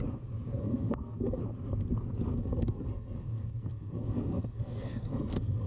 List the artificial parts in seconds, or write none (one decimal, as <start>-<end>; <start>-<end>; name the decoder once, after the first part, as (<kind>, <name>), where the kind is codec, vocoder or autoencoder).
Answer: 0.6-1.4 (codec, SNAC); 2.3-5.7